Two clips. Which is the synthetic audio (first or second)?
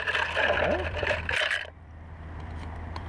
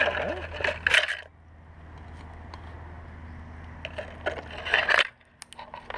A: first